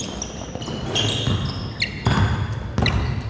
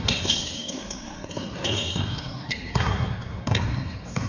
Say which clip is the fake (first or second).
second